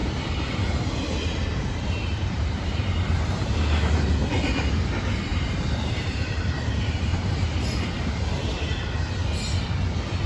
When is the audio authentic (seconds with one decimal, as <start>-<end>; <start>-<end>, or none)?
3.4-4.2; 4.8-5.3; 6.6-7.1; 7.8-10.3